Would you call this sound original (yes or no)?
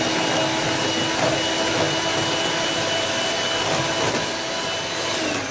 yes